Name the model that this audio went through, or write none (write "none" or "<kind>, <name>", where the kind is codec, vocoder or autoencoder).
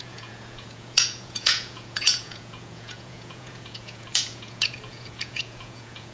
vocoder, Vocos